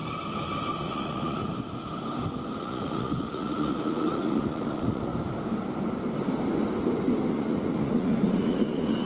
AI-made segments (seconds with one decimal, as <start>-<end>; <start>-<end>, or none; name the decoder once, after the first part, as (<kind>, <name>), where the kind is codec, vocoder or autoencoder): 0.8-1.4 (vocoder, Vocos); 2.6-5.1; 7.3-9.1